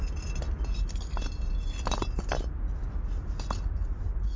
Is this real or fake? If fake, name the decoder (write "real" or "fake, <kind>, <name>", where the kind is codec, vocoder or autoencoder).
real